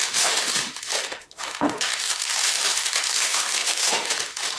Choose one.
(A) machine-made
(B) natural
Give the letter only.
A